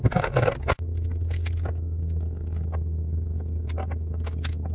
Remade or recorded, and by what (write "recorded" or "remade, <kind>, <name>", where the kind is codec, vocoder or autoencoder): remade, codec, DAC